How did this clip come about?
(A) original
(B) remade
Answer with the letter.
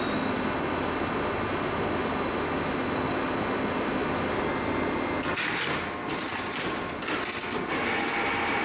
A